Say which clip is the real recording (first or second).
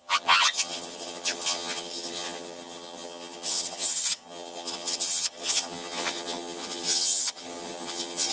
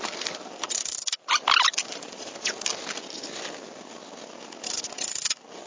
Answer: second